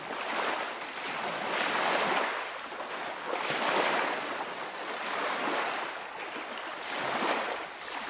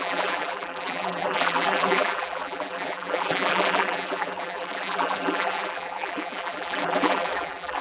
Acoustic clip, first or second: first